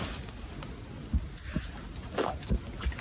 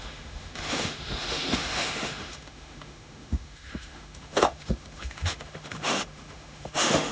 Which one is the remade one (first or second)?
second